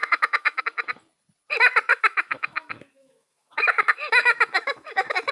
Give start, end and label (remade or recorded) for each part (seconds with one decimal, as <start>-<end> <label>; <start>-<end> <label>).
0.0-0.6 remade; 0.6-1.9 recorded; 1.9-5.3 remade